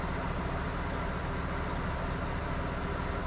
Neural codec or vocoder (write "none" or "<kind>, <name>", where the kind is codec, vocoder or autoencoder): none